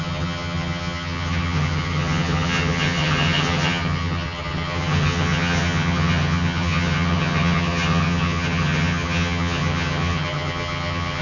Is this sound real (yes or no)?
no